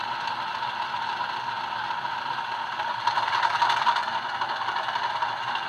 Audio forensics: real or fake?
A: real